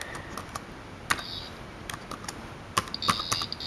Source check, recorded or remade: recorded